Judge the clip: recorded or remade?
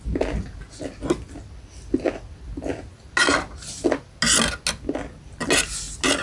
recorded